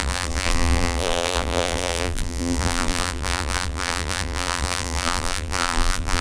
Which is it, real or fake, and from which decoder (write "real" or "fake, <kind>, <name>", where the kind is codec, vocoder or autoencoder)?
fake, vocoder, BigVGAN v2